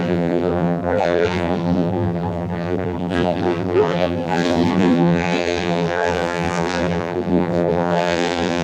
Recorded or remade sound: remade